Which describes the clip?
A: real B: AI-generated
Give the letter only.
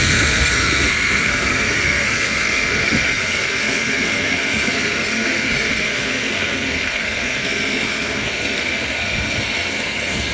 B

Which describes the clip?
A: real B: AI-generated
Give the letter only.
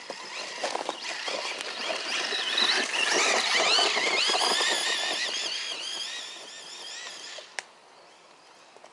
A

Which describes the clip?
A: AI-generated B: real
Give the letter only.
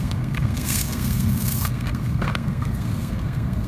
A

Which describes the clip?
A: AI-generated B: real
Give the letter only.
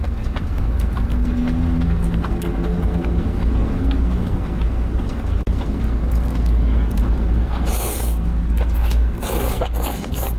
A